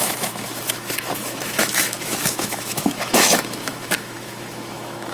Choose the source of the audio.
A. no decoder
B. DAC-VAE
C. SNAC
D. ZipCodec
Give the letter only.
B